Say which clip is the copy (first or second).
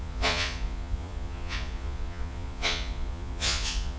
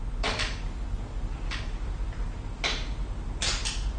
first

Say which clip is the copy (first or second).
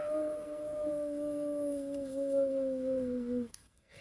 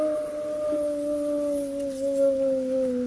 first